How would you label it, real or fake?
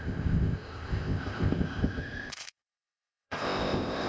fake